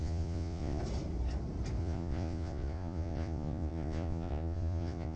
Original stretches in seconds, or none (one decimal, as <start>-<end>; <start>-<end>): 0.8-1.8